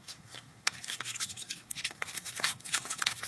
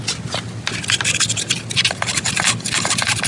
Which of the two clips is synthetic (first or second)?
first